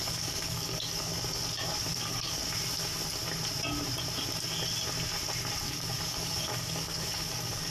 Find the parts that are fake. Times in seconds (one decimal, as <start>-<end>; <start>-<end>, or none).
0.0-1.1; 1.9-2.4; 5.6-7.7